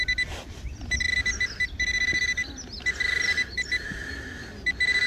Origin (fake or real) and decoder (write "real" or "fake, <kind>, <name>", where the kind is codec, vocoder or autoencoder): real